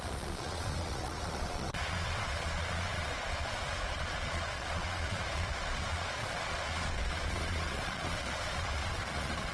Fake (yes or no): yes